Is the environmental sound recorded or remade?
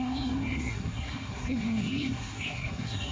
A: remade